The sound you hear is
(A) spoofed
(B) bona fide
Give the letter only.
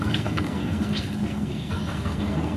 A